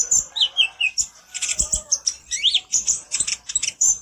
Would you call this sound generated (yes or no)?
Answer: yes